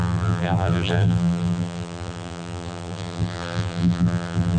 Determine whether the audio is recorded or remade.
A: remade